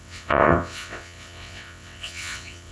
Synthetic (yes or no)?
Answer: yes